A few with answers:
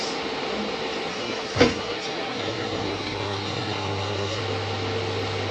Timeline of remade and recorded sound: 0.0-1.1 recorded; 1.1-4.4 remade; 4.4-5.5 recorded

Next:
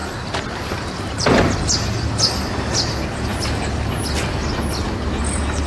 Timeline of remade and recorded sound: 0.0-5.7 recorded

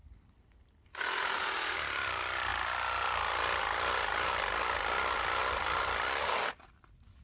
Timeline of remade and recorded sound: 0.0-2.5 remade; 2.5-6.8 recorded; 6.8-7.2 remade

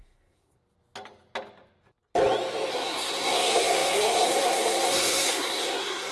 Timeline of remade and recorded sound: 0.0-0.6 remade; 0.6-2.7 recorded; 2.7-6.1 remade